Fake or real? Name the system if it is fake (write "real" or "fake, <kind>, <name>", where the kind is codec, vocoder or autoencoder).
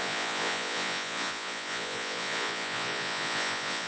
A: fake, vocoder, Vocos